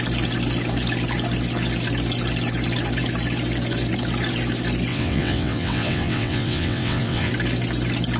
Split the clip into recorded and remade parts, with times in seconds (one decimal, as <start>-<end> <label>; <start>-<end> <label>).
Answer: 0.0-4.9 recorded; 4.9-7.3 remade; 7.3-8.2 recorded